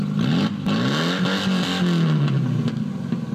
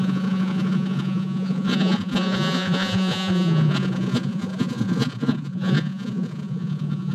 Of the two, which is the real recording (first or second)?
first